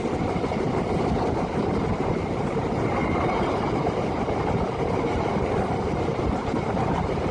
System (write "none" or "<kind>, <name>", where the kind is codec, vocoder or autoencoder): vocoder, BigVGAN v2